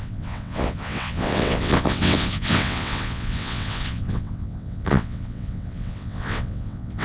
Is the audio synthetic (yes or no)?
yes